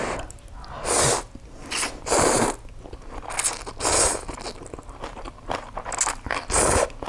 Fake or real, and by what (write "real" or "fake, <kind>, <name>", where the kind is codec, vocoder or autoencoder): real